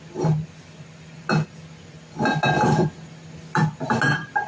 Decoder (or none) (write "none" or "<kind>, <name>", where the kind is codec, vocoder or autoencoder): none